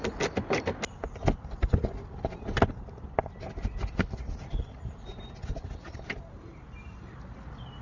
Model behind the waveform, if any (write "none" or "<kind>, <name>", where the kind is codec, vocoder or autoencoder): none